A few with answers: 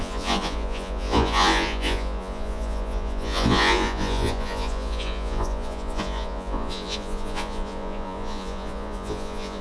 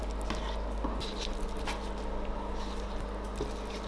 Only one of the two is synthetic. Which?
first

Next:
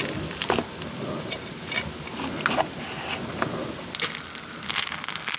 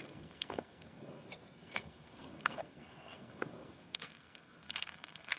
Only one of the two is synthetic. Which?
second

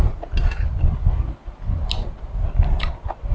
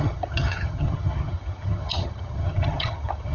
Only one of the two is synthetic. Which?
second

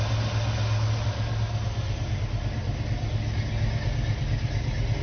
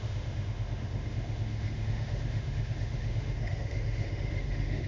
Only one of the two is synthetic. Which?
second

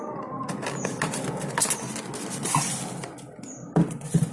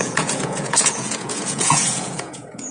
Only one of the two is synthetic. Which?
second